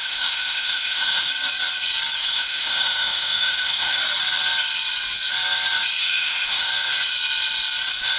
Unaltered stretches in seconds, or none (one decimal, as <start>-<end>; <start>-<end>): 1.3-2.2; 4.0-6.0; 6.7-8.2